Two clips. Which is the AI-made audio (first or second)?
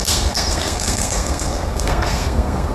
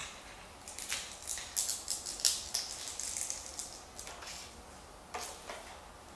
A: first